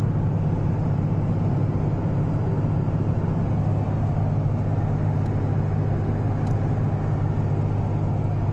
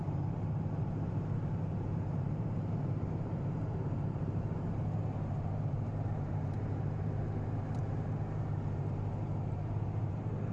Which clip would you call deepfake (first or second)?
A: second